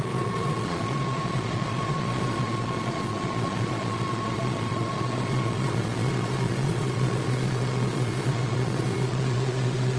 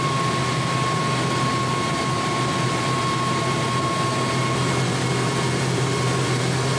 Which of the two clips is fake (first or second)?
first